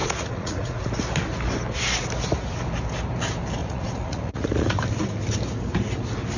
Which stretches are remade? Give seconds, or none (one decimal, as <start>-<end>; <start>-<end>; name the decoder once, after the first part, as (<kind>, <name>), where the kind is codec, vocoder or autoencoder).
0.0-0.9 (vocoder, Vocos); 3.6-4.8